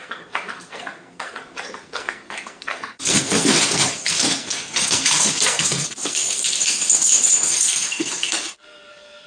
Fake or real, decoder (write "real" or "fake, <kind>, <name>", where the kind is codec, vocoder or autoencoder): fake, codec, SNAC